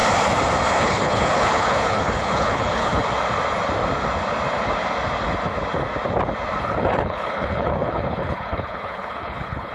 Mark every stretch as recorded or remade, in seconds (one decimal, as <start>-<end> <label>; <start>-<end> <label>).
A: 0.0-0.7 recorded; 0.7-3.0 remade; 3.0-6.6 recorded; 6.6-9.7 remade